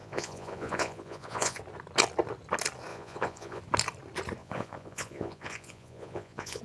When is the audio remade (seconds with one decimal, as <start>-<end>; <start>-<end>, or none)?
0.0-1.6; 2.9-3.6; 4.4-6.6